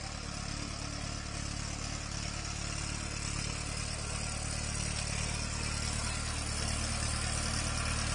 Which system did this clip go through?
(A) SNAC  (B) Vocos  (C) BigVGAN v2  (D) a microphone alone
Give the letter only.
D